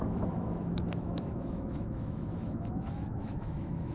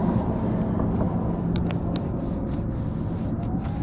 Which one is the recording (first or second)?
second